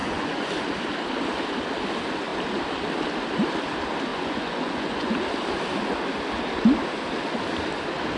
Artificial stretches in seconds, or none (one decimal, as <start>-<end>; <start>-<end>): 0.0-0.5; 4.1-5.1